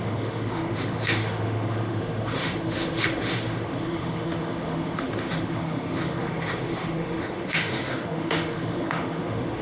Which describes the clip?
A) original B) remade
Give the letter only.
B